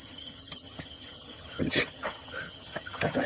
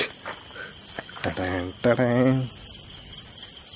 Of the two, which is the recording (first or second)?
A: second